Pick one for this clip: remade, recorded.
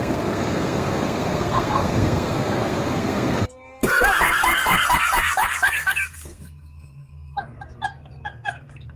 remade